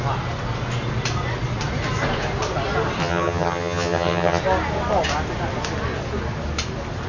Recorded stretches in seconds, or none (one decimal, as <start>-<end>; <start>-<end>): 0.0-3.0; 4.4-7.1